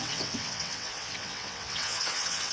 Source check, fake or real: fake